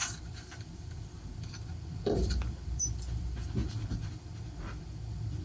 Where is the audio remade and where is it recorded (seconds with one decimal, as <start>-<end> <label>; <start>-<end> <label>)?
0.0-5.4 remade